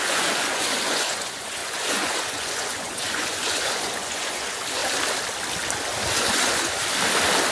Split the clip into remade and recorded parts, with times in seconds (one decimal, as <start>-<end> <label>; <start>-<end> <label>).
0.0-4.8 remade; 4.8-6.2 recorded; 6.2-6.9 remade; 6.9-7.5 recorded